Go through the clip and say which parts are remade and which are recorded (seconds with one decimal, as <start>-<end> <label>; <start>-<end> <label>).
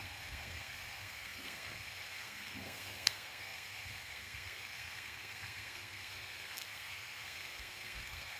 0.0-8.4 remade